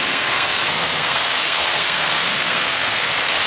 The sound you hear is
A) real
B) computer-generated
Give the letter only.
B